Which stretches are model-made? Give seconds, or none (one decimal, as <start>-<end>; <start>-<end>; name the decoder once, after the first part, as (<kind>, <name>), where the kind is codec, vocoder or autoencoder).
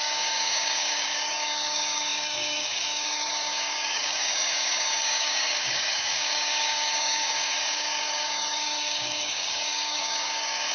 0.0-10.7 (codec, DAC)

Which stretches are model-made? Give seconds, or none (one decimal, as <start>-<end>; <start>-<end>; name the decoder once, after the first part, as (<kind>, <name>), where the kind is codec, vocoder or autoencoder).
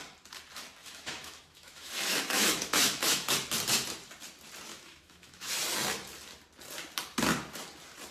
0.8-3.3 (autoencoder, DAC-VAE); 4.7-5.5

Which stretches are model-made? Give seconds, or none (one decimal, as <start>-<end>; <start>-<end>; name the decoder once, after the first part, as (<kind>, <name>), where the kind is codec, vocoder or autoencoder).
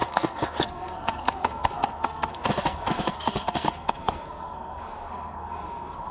0.0-6.1 (codec, SNAC)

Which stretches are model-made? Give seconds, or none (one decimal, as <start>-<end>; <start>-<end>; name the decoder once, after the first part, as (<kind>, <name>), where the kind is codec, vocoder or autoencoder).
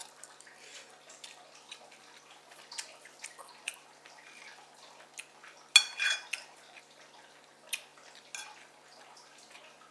none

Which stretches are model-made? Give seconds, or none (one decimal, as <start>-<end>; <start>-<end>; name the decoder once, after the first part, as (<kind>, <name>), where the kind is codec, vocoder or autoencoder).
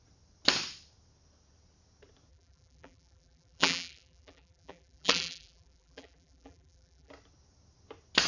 2.3-7.1 (vocoder, BigVGAN v2)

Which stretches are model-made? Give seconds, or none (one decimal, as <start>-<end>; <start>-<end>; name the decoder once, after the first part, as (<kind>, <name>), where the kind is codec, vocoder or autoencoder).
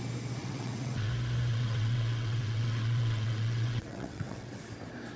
0.4-1.1 (vocoder, WaveNeXt); 1.5-4.6